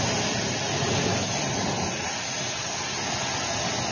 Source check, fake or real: real